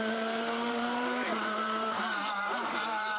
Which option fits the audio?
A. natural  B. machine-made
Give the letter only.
B